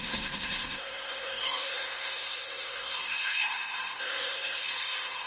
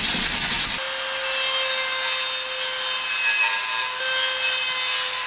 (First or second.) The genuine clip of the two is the second